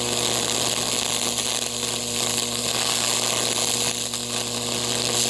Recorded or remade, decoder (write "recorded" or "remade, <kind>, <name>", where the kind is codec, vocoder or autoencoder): recorded